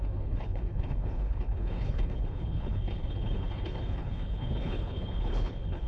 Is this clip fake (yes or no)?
yes